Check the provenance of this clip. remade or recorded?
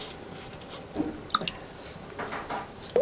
recorded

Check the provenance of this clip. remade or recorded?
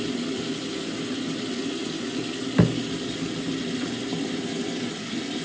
recorded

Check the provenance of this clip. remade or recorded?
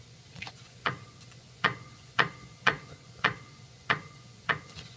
remade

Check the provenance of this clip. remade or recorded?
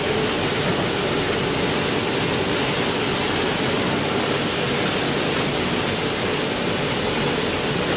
recorded